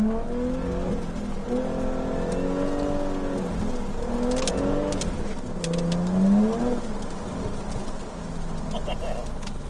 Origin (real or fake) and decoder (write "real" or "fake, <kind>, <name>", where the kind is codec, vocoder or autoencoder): real